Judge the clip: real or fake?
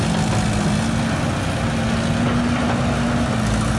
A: real